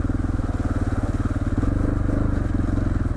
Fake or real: real